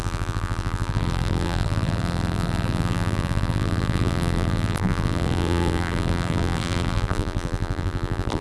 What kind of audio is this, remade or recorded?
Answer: remade